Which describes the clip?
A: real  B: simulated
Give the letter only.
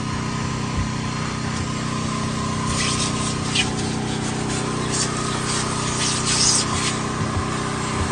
A